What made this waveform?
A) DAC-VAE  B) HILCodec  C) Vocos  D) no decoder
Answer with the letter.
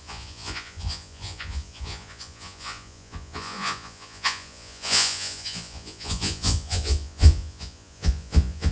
C